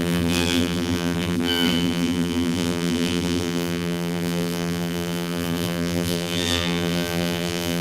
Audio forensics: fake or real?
fake